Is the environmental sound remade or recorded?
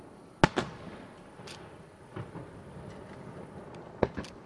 recorded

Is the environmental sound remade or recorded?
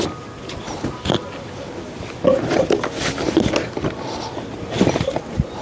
recorded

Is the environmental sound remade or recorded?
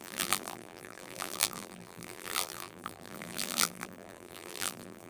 remade